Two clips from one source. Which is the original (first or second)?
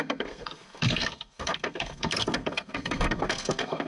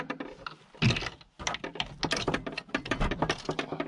second